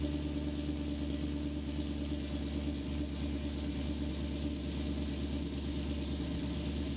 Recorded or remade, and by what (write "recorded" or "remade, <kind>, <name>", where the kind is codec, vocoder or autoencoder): recorded